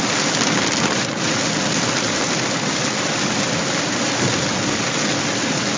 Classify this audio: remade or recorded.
recorded